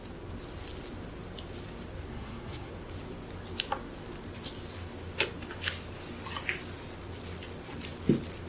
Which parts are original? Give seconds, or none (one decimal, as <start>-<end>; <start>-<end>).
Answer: 0.0-2.1; 2.7-8.5